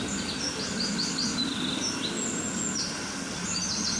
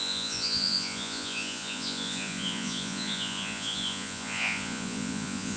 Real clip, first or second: first